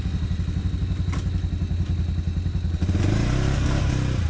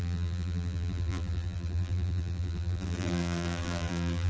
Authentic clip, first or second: first